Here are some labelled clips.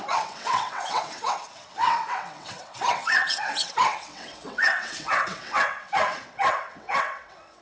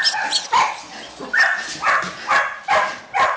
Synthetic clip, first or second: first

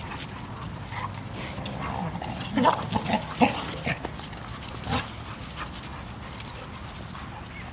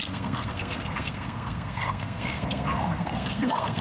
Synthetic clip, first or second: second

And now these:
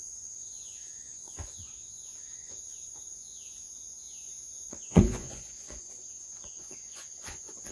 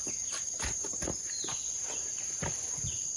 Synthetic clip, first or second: first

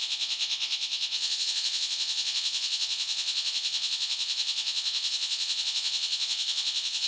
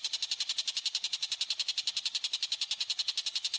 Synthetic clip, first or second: first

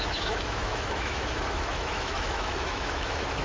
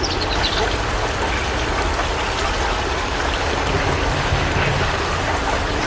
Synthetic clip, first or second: first